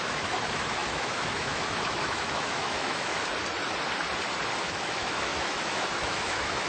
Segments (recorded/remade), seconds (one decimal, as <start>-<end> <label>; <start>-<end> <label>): 0.0-3.1 remade; 3.1-4.6 recorded; 4.6-6.7 remade